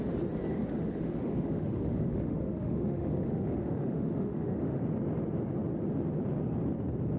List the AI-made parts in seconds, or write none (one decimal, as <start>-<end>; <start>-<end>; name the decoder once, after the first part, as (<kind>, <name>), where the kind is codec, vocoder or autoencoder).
0.5-4.8 (autoencoder, DAC-VAE)